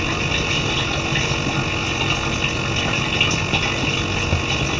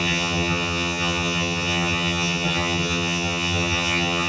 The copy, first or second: second